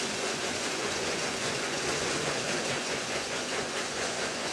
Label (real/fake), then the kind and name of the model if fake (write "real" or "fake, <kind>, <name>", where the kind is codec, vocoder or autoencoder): fake, vocoder, Vocos